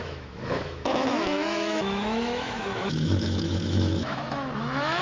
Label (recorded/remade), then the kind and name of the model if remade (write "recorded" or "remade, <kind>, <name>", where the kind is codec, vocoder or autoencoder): remade, autoencoder, DAC-VAE